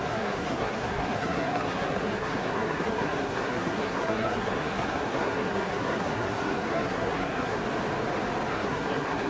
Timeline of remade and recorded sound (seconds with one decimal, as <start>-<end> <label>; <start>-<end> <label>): 0.0-7.6 remade; 7.6-8.5 recorded; 8.5-9.3 remade

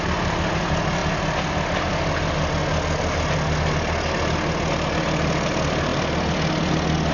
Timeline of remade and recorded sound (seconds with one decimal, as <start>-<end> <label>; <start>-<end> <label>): 0.0-7.1 recorded

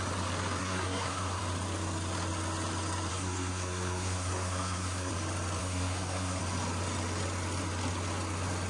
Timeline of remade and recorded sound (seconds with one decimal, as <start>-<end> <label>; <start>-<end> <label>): 0.0-0.6 recorded; 0.6-1.4 remade; 1.4-3.1 recorded; 3.1-5.1 remade; 5.1-5.6 recorded; 5.6-6.4 remade; 6.4-8.7 recorded